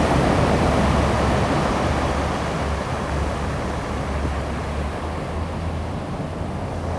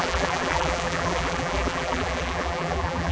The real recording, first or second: first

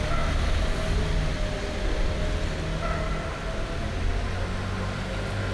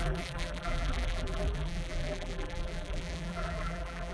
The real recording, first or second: first